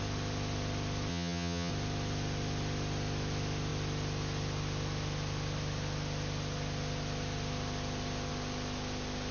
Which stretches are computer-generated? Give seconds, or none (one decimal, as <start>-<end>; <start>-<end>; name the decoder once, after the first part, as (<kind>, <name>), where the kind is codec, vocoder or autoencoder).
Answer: 1.1-1.7 (vocoder, HiFi-GAN)